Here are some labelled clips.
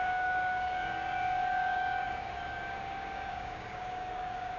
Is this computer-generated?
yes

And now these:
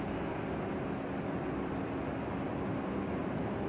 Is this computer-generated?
no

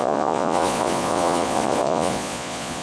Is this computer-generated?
yes